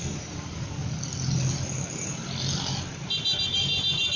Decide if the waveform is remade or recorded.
recorded